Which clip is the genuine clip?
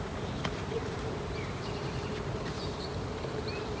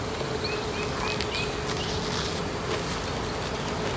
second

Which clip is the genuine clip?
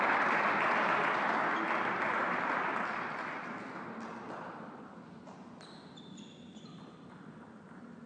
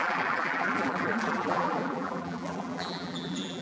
first